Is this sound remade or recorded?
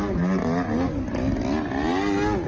recorded